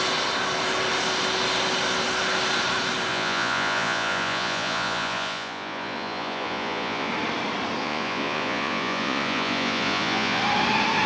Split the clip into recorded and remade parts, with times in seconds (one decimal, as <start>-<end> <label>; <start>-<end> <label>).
0.0-3.1 recorded; 3.1-7.1 remade; 7.1-7.8 recorded; 7.8-10.4 remade; 10.4-11.1 recorded